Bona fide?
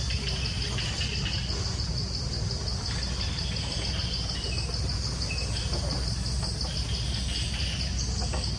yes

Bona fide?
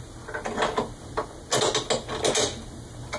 yes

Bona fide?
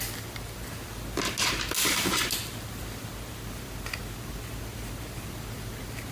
yes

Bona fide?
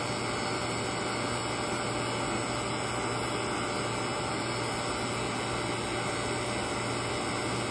yes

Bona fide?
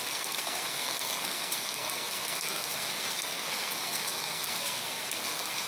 no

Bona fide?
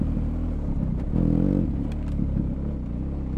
yes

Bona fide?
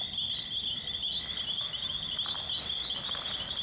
yes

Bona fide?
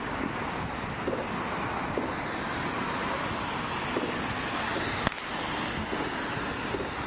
yes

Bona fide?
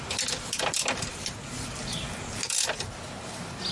yes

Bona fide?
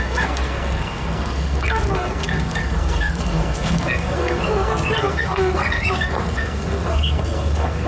no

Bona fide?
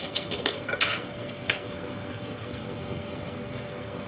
no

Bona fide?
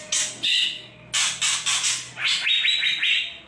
yes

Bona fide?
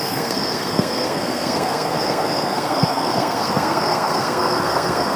no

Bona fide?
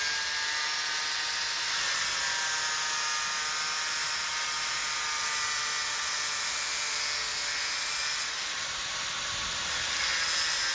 yes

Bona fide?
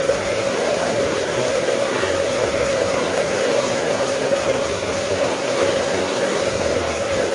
no